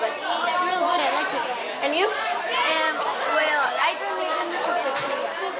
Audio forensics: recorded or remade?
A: recorded